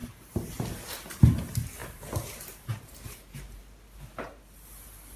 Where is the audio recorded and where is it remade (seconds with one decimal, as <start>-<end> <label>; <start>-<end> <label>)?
0.0-1.8 recorded; 1.8-3.6 remade; 3.6-5.2 recorded